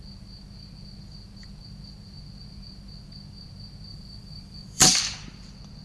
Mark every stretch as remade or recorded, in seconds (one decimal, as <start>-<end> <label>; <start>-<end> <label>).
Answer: 0.0-3.9 recorded; 3.9-5.0 remade; 5.0-5.8 recorded